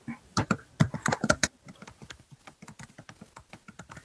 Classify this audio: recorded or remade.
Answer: recorded